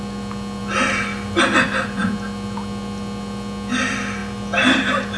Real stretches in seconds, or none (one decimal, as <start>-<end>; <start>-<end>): 0.0-5.2